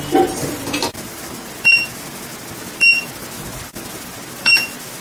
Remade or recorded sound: recorded